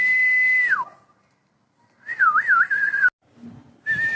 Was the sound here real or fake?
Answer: real